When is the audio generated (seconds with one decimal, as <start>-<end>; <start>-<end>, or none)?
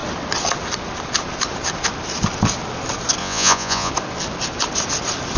3.2-3.9